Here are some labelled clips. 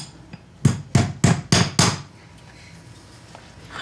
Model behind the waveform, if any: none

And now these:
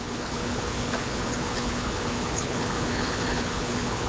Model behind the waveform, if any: codec, HILCodec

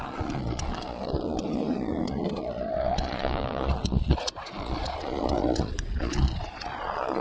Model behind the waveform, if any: vocoder, Vocos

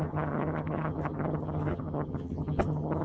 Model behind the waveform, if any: vocoder, HiFi-GAN